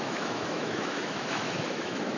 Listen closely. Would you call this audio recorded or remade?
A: remade